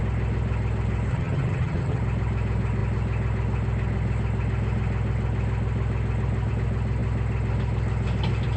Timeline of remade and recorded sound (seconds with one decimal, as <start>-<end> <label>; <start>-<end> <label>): 0.0-1.1 recorded; 1.1-2.0 remade; 2.0-8.6 recorded